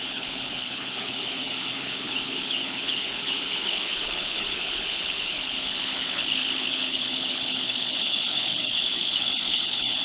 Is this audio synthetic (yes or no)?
yes